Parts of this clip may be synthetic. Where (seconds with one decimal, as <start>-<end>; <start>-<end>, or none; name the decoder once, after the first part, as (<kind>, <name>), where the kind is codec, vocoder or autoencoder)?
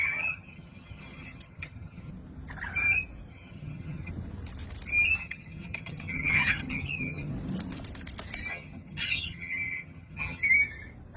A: 0.0-2.1 (vocoder, HiFi-GAN); 3.3-4.1; 5.2-7.3; 8.5-10.5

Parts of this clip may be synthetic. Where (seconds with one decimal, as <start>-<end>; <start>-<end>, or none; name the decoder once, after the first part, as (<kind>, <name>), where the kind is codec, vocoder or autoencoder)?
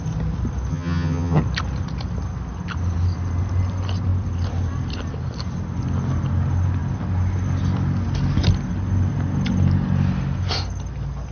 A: 0.7-1.4 (vocoder, HiFi-GAN)